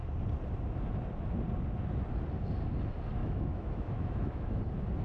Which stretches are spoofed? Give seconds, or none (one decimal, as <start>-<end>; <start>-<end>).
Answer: 3.2-4.6